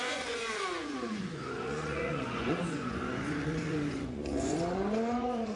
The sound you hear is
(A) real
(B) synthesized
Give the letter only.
B